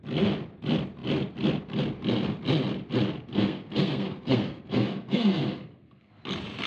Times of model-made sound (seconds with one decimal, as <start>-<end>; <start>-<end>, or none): 3.3-6.2